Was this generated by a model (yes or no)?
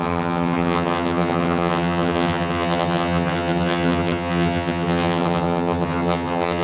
yes